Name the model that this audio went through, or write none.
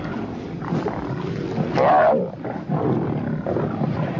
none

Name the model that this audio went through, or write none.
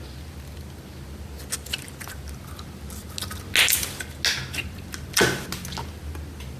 none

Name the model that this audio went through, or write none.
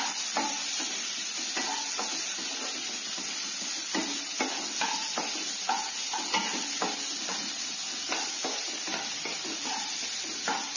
none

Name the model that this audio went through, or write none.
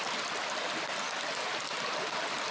none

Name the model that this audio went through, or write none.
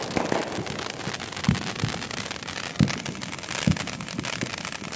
none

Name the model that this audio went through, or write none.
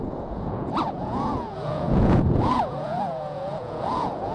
vocoder, Vocos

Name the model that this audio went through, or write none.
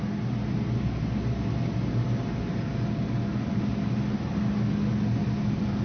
none